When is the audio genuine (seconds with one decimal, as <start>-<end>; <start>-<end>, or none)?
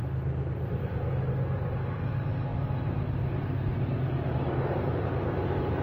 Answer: 0.0-5.8